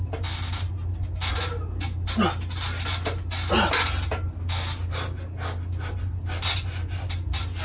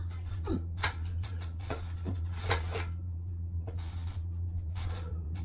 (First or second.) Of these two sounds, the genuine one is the first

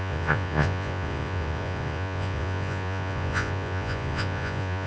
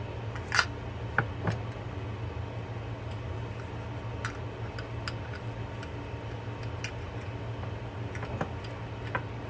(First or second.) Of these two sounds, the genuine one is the second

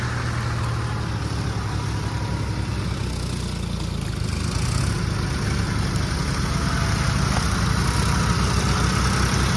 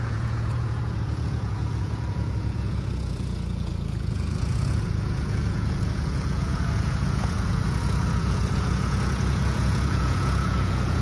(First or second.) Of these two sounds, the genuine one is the first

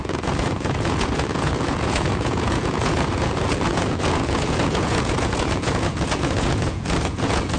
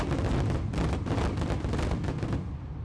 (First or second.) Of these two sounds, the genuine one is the second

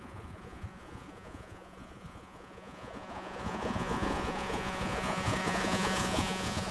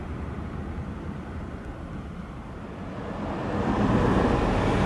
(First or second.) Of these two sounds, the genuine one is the second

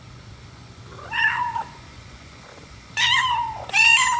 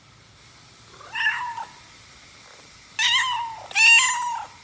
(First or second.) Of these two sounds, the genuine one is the second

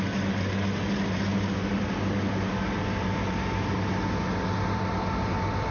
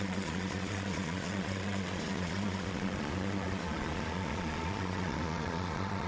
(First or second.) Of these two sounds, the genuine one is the first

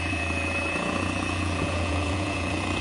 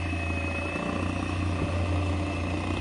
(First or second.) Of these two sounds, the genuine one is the second